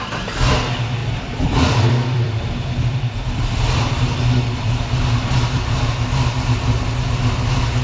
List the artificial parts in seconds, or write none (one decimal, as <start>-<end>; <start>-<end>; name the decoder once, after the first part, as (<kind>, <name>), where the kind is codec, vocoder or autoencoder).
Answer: 1.0-5.7 (vocoder, BigVGAN v2)